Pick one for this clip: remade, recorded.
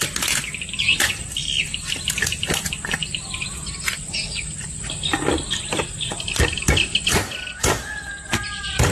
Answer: recorded